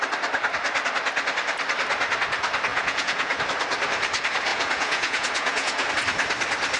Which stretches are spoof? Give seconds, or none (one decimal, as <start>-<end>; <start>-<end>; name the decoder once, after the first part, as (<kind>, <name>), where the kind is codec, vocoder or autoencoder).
2.7-3.4 (vocoder, Vocos); 4.5-5.9